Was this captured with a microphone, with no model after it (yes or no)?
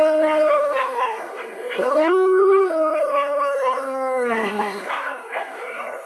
no